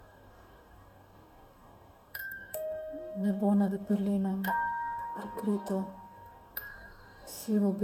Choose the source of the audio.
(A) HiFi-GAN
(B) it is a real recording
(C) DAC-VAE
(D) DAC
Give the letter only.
D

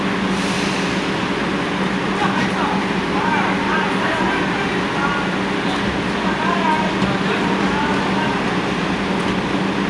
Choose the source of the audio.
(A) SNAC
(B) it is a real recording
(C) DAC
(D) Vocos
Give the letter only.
B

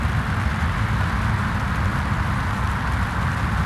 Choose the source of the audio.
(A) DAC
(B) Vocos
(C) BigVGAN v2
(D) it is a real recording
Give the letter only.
D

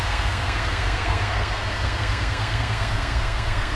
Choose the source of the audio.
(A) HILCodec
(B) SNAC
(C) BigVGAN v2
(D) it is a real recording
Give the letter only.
B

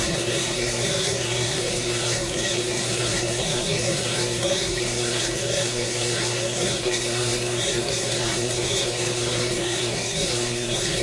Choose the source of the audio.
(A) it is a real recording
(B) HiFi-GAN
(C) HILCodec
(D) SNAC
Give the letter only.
D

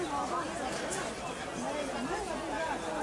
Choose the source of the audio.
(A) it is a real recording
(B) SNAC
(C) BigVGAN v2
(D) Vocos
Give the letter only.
A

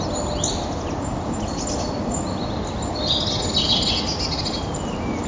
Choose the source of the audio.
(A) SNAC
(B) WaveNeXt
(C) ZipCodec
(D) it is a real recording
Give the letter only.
D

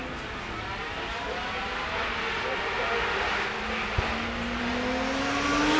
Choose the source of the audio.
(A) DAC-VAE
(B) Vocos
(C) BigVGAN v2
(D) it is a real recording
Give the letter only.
D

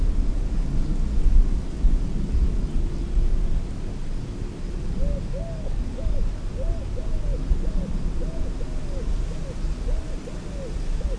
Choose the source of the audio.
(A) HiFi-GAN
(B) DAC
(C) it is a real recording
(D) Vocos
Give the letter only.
C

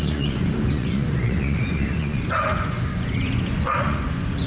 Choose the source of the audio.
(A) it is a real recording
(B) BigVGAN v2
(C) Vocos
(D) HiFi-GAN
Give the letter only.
C